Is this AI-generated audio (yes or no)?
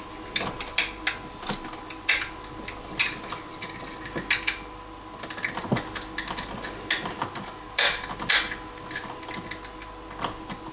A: no